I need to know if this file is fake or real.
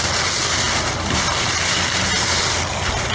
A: real